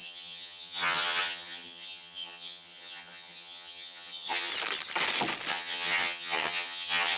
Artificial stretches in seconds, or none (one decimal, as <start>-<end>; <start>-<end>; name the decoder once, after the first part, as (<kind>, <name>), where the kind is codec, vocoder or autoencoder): 0.0-4.5 (vocoder, HiFi-GAN); 5.5-7.2